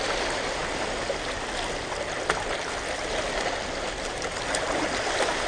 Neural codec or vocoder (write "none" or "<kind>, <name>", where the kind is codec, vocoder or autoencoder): none